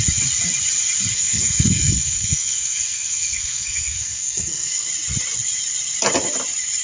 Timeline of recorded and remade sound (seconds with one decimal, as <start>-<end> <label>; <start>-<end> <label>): 0.0-1.1 recorded; 1.1-4.9 remade; 4.9-6.8 recorded